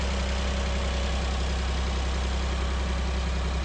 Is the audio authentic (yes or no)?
yes